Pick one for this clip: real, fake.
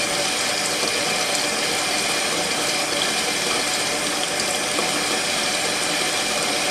real